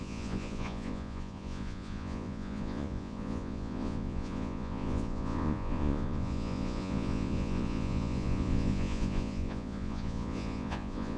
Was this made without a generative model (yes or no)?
no